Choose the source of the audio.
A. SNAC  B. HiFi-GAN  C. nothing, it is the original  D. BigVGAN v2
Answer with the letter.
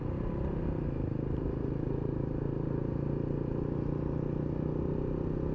C